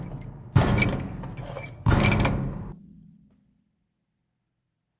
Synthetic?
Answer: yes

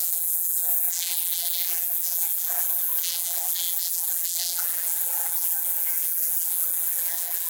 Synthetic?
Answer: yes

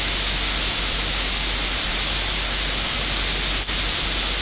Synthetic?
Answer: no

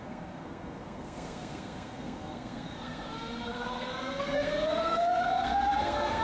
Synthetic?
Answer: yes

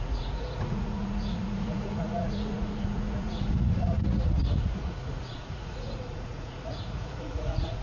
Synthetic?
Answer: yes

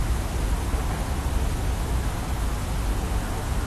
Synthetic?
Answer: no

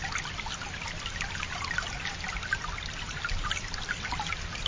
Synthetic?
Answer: no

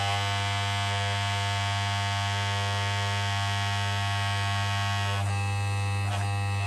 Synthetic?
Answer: no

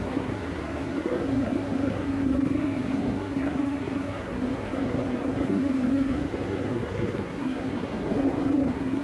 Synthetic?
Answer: yes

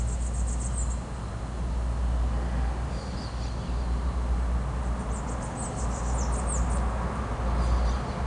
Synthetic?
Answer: no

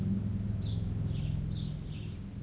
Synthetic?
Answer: no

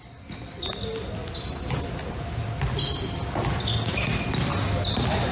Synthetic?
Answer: no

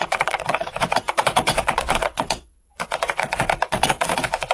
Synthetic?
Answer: yes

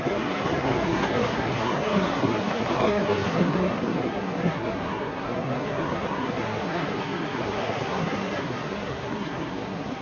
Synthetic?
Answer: yes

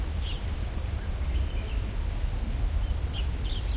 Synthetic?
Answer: no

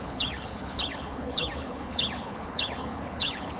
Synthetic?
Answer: yes